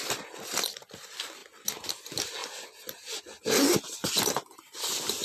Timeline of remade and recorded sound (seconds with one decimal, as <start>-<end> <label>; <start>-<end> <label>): 0.0-5.2 recorded